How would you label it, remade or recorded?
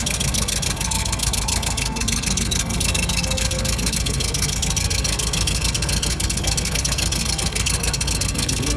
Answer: remade